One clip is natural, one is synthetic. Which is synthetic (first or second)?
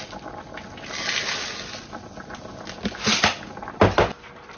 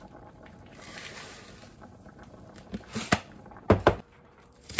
second